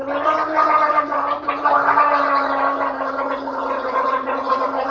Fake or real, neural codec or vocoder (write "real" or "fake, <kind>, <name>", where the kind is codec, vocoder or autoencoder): real